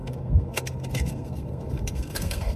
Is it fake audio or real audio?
fake